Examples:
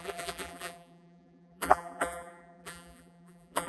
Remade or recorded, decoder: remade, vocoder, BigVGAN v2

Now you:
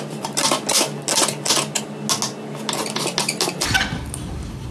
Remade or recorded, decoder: recorded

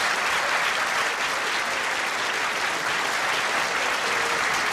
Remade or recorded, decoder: recorded